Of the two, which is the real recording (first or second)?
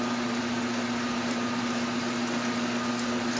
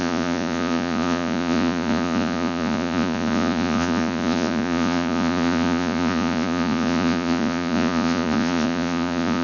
first